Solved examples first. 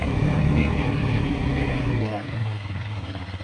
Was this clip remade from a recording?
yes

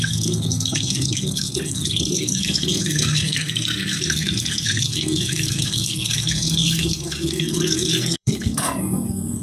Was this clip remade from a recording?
yes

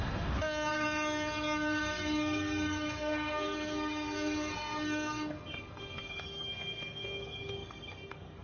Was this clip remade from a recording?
yes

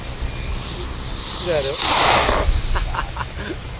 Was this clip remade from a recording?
no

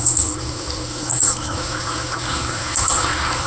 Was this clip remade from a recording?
yes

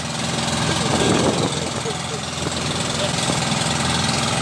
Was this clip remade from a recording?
no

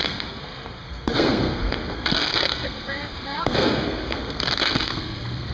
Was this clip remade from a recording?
yes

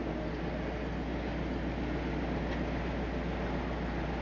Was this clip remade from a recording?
no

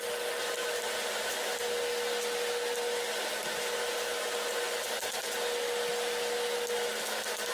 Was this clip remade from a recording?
no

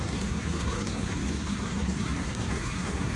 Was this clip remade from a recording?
yes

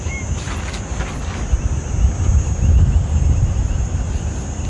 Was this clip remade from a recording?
no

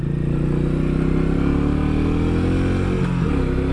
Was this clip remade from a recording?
no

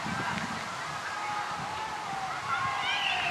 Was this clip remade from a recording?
no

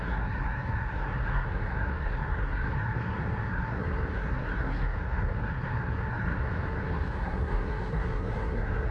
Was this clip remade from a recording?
yes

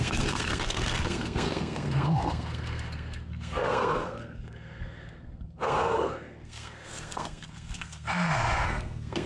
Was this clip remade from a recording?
yes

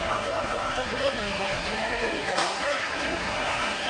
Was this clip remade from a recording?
yes